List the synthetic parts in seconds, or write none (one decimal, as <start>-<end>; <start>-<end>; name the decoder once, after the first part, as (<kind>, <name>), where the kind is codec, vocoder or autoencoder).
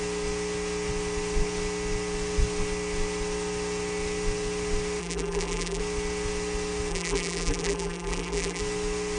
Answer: 5.0-5.8 (vocoder, BigVGAN v2); 6.9-8.6